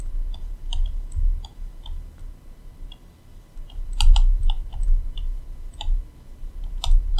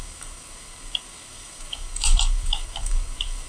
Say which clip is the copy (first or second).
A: second